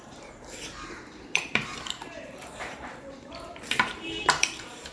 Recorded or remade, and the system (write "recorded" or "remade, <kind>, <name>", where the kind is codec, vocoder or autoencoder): remade, vocoder, BigVGAN v2